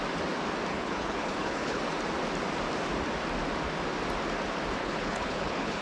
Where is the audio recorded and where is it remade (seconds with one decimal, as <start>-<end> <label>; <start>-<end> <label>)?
0.0-0.7 recorded; 0.7-1.8 remade; 1.8-4.8 recorded; 4.8-5.8 remade